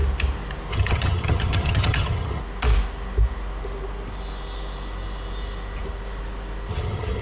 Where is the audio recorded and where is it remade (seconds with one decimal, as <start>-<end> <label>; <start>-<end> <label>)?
0.0-0.7 recorded; 0.7-2.4 remade; 2.4-6.7 recorded; 6.7-7.2 remade